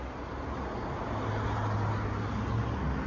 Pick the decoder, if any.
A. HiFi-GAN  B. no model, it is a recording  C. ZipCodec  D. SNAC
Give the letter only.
B